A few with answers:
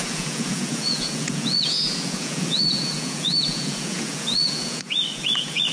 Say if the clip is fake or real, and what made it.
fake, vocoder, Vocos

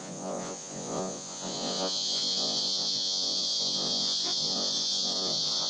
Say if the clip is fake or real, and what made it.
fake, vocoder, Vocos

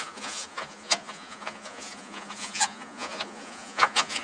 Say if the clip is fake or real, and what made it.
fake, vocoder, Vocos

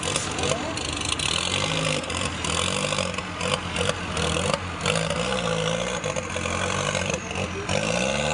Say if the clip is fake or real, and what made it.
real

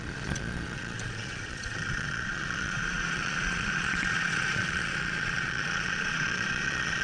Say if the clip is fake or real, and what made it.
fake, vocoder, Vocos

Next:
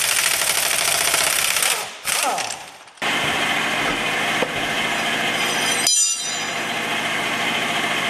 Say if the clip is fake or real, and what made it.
real